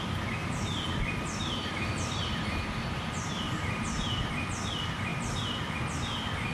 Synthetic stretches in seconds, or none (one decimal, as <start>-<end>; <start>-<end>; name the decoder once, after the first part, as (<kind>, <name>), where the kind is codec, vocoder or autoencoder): 0.4-4.3 (vocoder, BigVGAN v2); 5.1-5.7